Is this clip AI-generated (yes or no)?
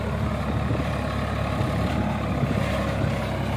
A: no